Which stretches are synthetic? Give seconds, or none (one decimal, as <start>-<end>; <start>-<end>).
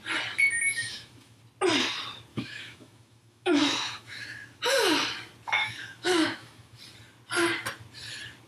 0.7-1.4; 2.3-4.6; 5.6-6.8